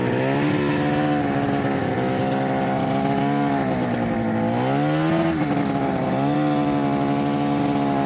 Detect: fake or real real